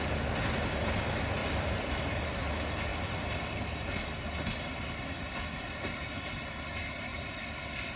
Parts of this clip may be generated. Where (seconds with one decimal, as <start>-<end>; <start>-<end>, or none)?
1.4-2.1; 7.1-8.0